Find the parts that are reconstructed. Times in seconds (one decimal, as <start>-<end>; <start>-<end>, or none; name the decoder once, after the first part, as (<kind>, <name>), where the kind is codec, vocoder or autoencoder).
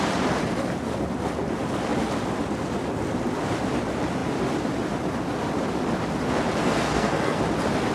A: 6.6-7.4 (codec, SNAC)